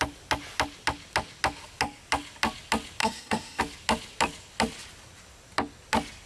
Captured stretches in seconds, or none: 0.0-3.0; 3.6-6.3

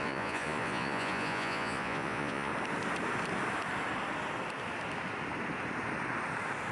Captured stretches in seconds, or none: 2.5-6.7

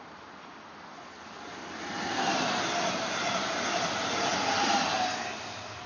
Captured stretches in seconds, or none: 0.0-5.9

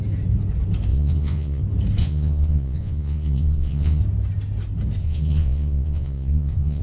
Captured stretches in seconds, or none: 0.0-0.9; 1.6-2.0; 4.0-5.0

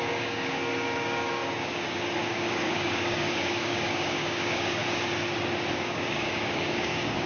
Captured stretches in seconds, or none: 4.8-5.7